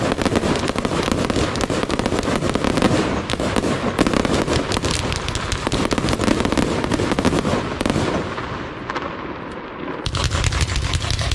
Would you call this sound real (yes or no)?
yes